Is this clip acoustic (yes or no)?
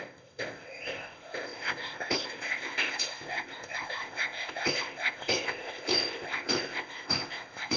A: no